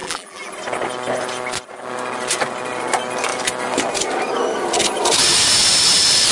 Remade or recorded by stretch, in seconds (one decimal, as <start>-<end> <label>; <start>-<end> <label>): 0.0-0.5 remade; 0.5-6.3 recorded